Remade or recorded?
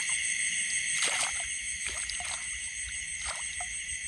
recorded